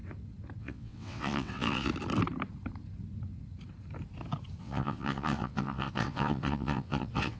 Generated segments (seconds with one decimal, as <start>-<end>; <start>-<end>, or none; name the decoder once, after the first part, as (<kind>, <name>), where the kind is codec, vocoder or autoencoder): 0.6-1.9 (vocoder, WaveNeXt); 4.6-7.4